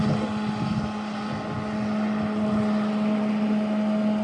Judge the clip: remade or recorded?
recorded